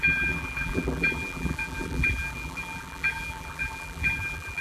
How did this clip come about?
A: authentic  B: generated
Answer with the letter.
B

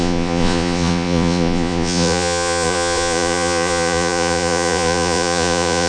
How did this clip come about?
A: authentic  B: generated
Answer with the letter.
B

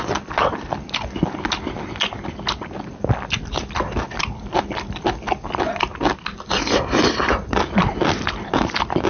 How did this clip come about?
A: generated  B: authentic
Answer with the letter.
B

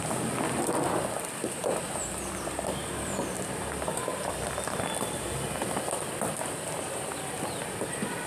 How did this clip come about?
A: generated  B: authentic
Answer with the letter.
B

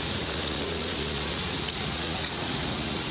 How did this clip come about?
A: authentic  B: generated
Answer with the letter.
B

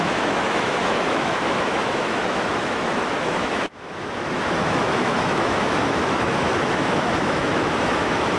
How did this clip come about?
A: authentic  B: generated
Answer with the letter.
B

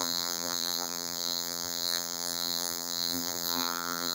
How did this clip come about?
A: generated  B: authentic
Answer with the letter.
A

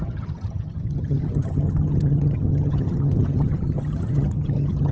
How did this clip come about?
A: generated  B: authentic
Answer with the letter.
A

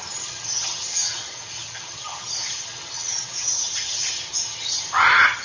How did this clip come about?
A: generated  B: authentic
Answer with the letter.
A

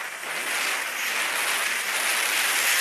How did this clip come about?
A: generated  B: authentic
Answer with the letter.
B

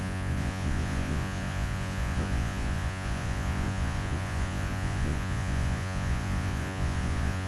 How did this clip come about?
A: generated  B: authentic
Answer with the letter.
A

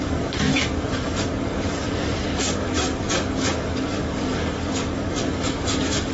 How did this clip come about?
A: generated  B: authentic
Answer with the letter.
A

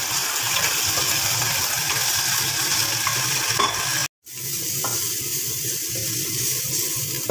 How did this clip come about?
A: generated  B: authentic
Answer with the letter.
B